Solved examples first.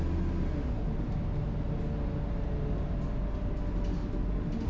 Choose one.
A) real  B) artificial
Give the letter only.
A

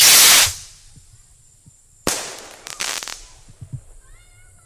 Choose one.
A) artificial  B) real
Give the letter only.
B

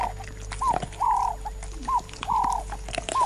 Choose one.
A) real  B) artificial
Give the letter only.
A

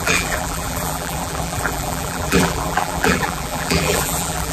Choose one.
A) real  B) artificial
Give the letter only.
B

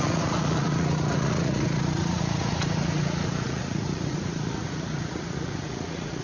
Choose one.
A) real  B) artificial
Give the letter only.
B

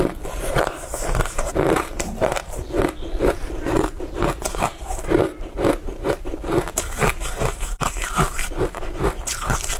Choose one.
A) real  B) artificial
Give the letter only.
B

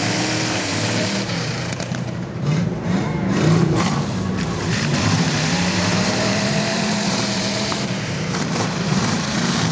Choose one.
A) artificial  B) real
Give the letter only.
A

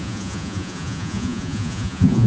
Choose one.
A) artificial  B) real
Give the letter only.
A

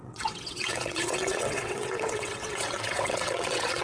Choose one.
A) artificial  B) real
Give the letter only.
A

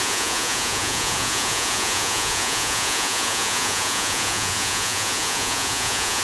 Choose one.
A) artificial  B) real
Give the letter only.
A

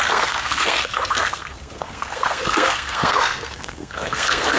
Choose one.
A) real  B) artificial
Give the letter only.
B